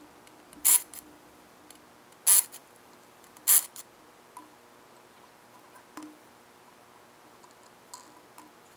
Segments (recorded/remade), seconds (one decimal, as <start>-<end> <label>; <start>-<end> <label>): 0.0-0.6 recorded; 0.6-1.6 remade; 1.6-2.6 recorded; 2.6-3.6 remade; 3.6-8.8 recorded